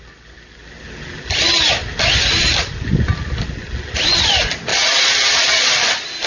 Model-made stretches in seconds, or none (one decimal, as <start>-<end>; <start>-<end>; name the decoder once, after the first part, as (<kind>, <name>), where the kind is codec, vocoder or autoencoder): 4.7-5.7 (vocoder, Vocos)